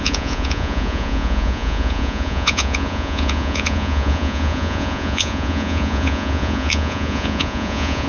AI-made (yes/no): yes